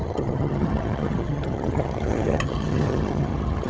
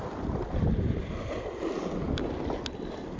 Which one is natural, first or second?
second